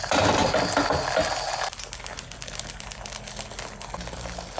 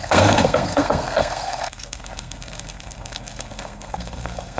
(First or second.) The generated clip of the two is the second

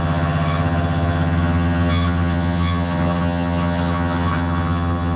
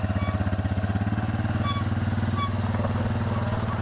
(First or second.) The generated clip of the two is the first